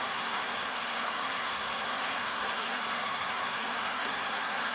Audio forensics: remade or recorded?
remade